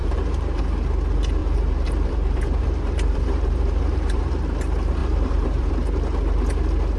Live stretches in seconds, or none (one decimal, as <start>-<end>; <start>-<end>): 0.6-1.4; 4.3-5.0; 5.7-7.0